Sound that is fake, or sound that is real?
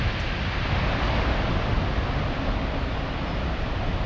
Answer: real